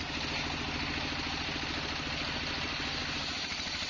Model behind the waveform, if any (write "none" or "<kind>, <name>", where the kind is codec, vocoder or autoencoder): none